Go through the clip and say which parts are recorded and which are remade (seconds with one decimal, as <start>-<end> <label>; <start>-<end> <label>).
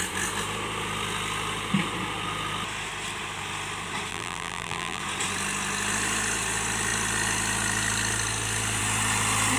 0.0-4.1 recorded; 4.1-5.0 remade; 5.0-9.6 recorded